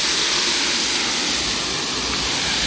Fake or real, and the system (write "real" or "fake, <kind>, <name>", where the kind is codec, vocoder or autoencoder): real